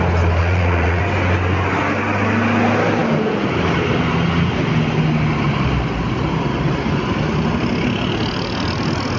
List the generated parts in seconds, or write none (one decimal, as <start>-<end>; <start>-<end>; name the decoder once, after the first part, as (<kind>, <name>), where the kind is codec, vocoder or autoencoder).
0.4-1.0 (vocoder, Vocos)